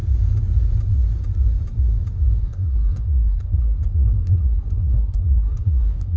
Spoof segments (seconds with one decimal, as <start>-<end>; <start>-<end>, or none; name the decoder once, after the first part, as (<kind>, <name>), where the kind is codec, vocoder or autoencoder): 2.4-6.2 (codec, SNAC)